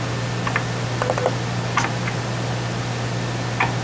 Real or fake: real